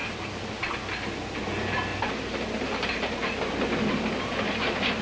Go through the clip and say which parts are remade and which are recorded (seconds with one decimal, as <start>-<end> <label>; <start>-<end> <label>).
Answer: 0.0-0.5 remade; 0.5-1.9 recorded; 1.9-3.4 remade; 3.4-5.0 recorded